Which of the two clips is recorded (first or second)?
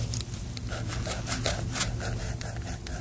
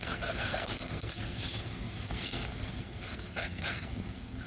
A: first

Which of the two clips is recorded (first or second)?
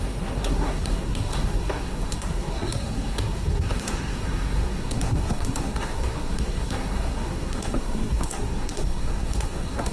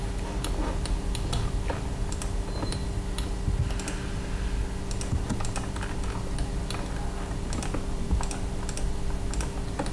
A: second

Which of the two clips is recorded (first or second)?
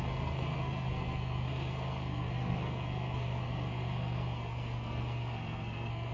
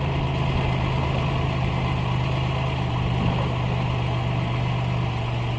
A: second